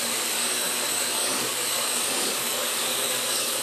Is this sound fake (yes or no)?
yes